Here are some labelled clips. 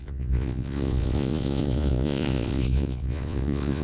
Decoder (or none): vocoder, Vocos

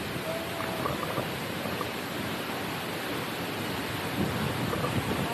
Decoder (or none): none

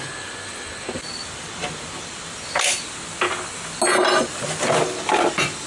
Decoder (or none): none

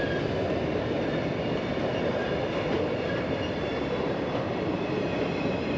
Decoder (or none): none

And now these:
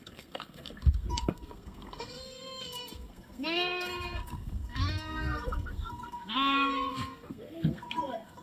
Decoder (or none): codec, SNAC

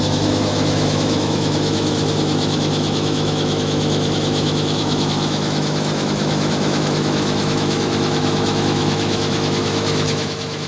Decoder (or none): autoencoder, DAC-VAE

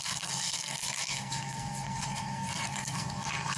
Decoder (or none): codec, SNAC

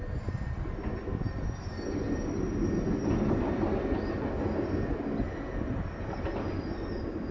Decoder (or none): none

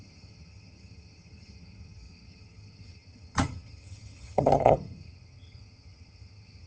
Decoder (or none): vocoder, HiFi-GAN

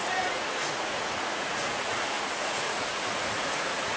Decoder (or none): vocoder, Vocos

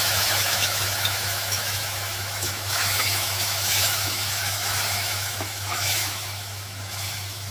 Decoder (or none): autoencoder, DAC-VAE